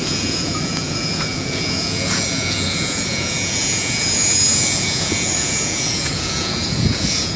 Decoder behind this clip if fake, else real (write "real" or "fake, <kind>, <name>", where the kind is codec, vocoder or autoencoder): fake, vocoder, Vocos